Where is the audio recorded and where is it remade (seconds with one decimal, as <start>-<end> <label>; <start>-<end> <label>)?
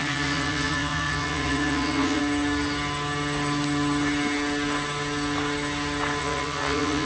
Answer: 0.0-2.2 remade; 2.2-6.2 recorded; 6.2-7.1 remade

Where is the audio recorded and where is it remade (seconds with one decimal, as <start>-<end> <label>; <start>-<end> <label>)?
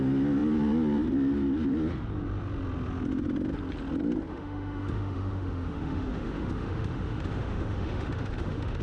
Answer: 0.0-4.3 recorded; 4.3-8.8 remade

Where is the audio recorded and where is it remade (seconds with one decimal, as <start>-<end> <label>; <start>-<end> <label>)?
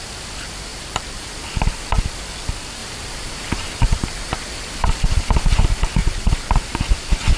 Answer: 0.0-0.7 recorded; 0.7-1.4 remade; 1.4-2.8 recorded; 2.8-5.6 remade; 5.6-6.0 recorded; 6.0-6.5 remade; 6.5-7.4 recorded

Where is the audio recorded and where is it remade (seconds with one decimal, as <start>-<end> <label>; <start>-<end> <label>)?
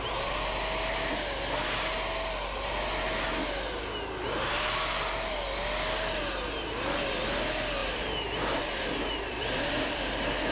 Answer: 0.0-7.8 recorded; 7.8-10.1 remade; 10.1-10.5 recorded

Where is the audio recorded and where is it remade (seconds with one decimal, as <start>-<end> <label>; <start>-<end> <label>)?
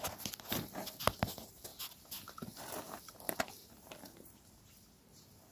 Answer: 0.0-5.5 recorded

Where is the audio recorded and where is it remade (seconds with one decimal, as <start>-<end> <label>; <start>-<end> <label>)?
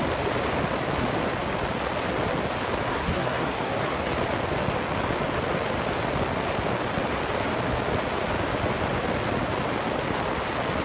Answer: 0.0-2.9 recorded; 2.9-4.1 remade; 4.1-10.8 recorded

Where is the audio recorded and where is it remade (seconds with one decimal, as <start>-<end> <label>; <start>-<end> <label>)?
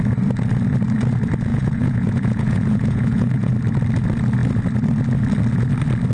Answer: 0.0-1.5 recorded; 1.5-3.5 remade; 3.5-6.1 recorded